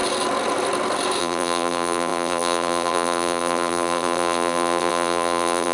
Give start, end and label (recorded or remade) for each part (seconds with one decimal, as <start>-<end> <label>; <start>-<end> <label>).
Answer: 0.0-1.2 recorded; 1.2-5.7 remade